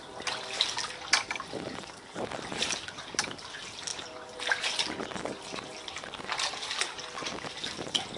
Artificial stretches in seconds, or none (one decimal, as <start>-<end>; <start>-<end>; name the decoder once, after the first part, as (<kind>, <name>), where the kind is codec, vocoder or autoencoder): none